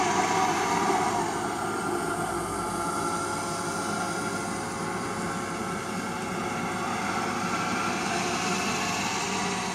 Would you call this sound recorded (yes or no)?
yes